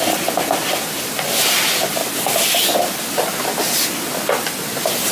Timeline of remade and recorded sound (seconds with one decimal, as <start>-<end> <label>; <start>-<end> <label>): 0.0-5.1 recorded